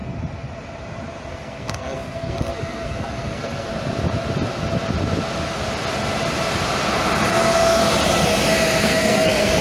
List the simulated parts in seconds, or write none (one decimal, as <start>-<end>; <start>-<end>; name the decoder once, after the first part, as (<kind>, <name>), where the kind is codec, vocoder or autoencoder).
1.3-3.7 (codec, SNAC); 7.3-7.8; 8.8-9.6